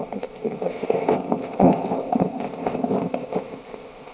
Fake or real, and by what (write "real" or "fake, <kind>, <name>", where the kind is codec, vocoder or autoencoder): fake, codec, ZipCodec